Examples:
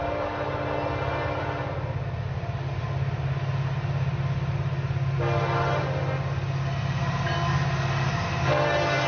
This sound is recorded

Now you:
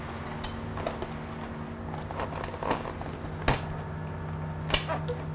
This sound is recorded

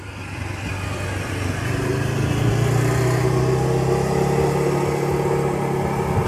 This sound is recorded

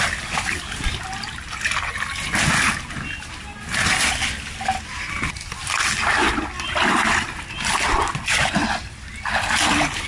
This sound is recorded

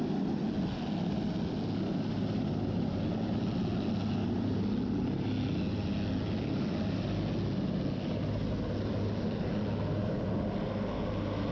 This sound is recorded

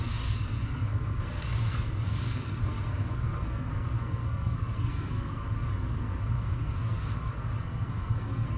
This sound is remade